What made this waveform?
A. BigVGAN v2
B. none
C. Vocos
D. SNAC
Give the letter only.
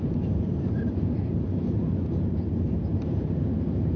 A